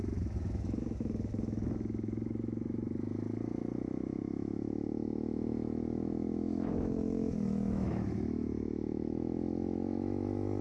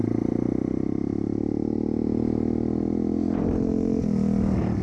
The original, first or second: second